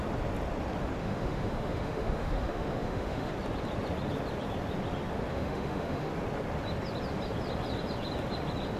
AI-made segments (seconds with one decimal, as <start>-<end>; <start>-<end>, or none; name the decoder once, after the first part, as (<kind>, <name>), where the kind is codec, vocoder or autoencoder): 1.0-3.3 (autoencoder, DAC-VAE); 5.3-6.1